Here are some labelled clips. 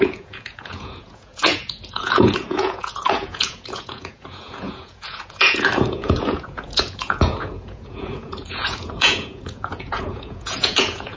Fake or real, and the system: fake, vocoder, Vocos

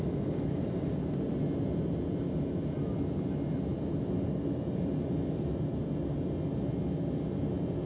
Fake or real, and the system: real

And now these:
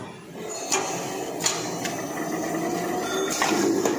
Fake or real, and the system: real